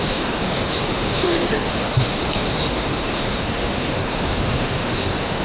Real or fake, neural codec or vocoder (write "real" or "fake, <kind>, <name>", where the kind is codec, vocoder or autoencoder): fake, autoencoder, DAC-VAE